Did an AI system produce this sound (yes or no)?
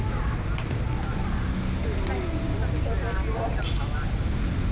no